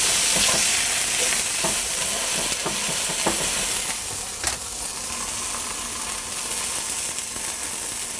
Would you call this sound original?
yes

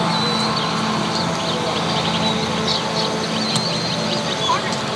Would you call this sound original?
yes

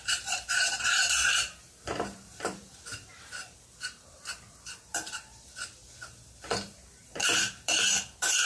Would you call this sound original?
no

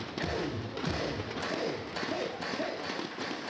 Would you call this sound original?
yes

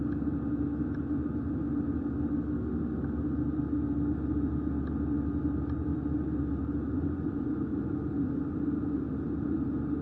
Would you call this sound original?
yes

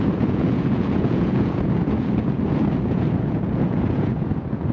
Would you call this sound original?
no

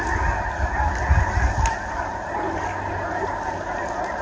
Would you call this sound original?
yes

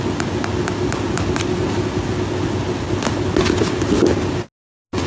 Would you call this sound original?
yes